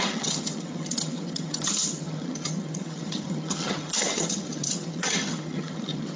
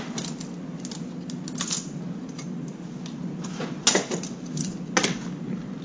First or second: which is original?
second